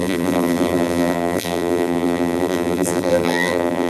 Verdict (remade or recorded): remade